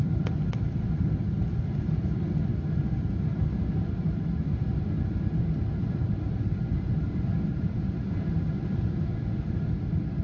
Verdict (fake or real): real